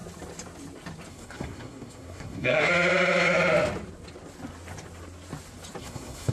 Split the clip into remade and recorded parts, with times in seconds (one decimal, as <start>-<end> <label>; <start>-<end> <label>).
0.0-1.1 recorded; 1.1-2.7 remade; 2.7-5.8 recorded; 5.8-6.3 remade